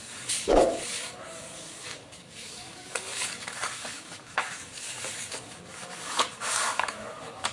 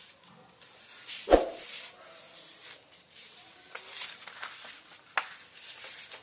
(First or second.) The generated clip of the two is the first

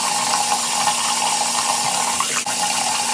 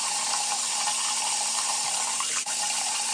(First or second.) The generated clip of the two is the second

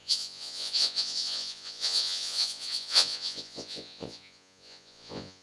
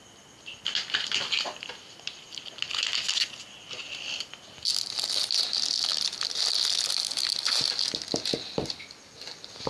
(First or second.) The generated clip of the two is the first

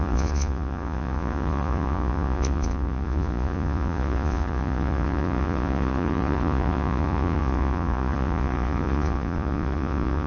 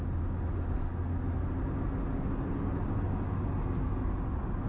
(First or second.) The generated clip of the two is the first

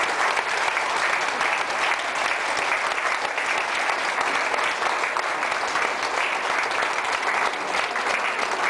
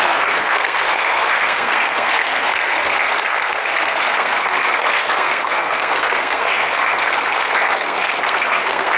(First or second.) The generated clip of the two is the second